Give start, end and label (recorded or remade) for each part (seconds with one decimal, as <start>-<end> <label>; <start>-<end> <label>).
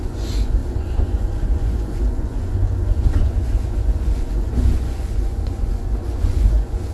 0.0-6.9 remade